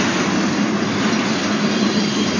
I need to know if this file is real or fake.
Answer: real